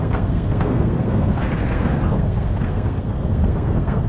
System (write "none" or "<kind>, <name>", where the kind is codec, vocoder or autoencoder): codec, SNAC